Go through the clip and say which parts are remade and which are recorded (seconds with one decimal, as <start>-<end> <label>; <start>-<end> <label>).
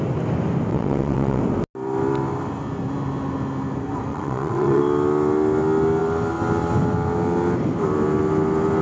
0.0-0.7 recorded; 0.7-1.4 remade; 1.4-4.1 recorded; 4.1-4.8 remade; 4.8-8.8 recorded